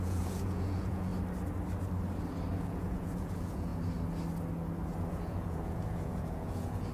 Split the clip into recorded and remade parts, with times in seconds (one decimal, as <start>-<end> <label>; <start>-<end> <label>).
0.0-1.1 remade; 1.1-2.5 recorded; 2.5-3.7 remade; 3.7-5.1 recorded; 5.1-6.9 remade